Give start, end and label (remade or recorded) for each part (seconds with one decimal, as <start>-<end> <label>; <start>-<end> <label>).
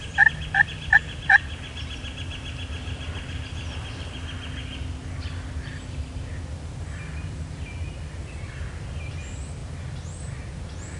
0.0-11.0 recorded